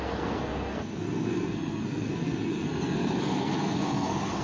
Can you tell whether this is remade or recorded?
remade